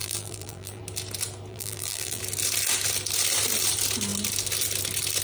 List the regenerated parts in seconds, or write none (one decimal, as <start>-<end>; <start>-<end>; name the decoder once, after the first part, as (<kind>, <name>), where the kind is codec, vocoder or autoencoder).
0.0-0.8 (vocoder, BigVGAN v2); 1.5-2.2